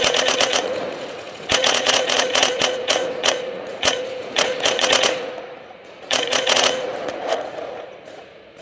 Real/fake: fake